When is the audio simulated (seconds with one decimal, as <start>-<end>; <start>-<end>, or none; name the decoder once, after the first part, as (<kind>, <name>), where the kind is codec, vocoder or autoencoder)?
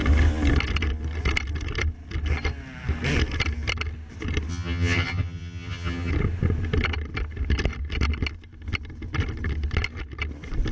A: 4.5-6.1 (vocoder, HiFi-GAN)